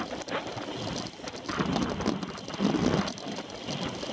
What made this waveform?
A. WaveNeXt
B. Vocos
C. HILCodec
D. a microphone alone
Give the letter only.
D